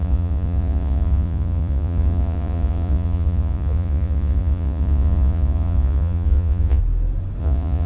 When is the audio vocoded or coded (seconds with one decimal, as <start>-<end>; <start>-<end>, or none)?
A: 0.0-6.8; 7.4-7.9